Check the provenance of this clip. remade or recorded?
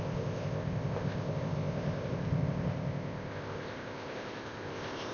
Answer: remade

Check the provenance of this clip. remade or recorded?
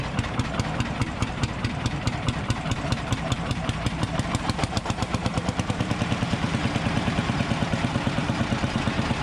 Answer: remade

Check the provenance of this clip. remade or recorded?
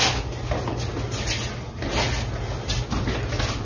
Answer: recorded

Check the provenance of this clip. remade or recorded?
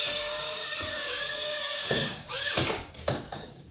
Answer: remade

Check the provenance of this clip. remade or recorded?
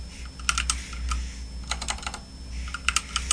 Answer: recorded